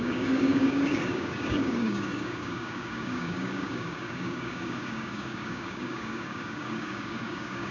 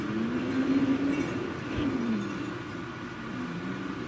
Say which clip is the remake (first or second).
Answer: first